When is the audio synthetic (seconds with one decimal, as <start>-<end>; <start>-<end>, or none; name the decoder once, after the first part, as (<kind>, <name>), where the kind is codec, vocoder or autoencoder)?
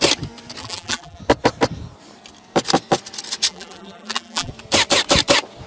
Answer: 0.6-1.2 (vocoder, BigVGAN v2); 3.5-4.5